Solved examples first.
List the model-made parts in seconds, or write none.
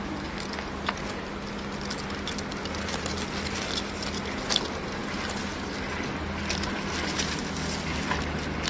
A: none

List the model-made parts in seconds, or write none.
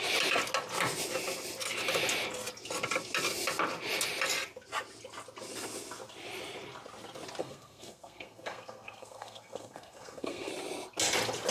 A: 7.4-10.5 (codec, SNAC)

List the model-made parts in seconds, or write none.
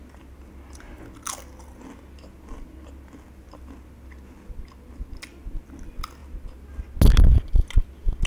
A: none